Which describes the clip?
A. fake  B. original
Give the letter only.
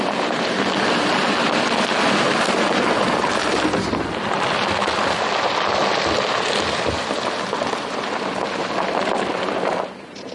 B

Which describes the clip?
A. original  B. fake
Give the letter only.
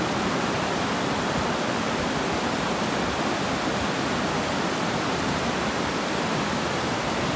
A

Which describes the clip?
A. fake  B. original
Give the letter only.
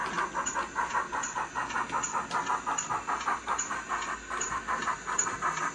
B